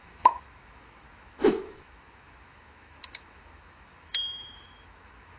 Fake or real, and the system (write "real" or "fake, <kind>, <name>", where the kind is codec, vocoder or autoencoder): fake, autoencoder, DAC-VAE